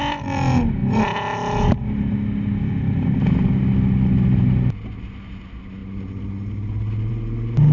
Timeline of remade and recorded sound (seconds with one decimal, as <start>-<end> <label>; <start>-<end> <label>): 0.0-7.7 recorded